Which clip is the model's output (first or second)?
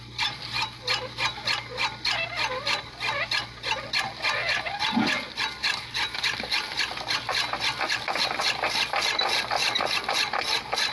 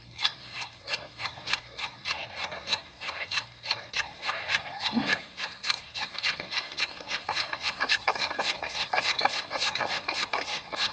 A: second